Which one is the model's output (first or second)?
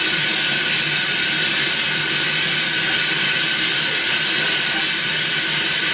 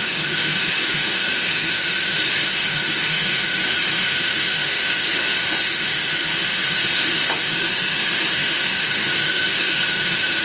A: second